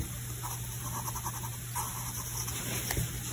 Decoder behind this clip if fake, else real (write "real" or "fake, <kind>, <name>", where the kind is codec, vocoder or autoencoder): real